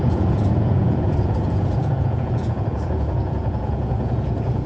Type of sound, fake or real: fake